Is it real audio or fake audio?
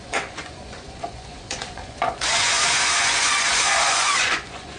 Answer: fake